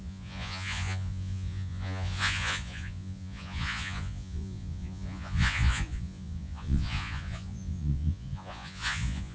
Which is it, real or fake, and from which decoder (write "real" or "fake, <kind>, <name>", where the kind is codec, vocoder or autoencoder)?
fake, vocoder, Vocos